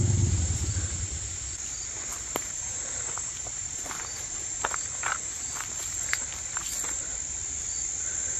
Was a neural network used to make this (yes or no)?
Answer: yes